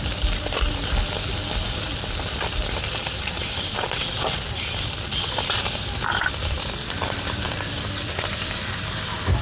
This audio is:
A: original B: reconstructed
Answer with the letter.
A